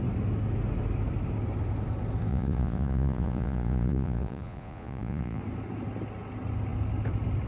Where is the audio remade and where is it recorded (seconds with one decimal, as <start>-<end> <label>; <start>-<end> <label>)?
0.0-2.3 recorded; 2.3-5.4 remade; 5.4-7.5 recorded